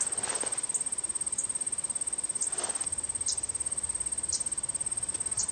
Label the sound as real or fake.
real